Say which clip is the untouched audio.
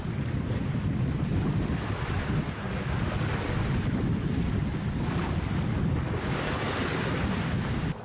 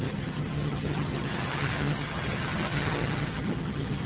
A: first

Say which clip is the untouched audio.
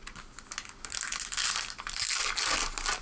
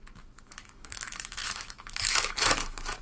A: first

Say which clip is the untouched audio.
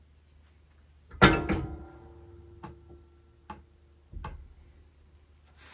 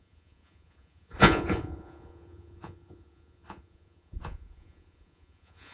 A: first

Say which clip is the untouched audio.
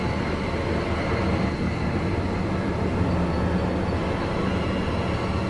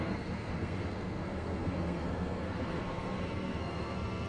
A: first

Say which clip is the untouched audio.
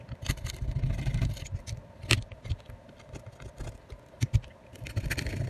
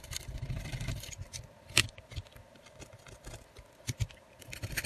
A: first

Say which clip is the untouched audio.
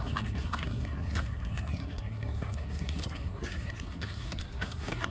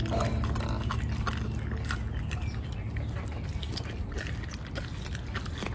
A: second